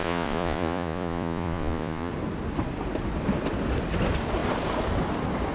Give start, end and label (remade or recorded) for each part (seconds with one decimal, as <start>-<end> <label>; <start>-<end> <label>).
0.0-2.1 remade; 2.1-5.5 recorded